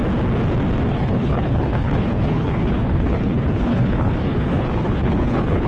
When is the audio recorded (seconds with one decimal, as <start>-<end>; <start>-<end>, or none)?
0.0-0.9